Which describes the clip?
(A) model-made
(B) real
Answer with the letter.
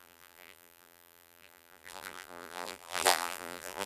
A